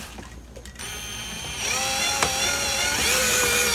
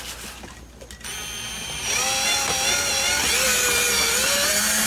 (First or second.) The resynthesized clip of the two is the first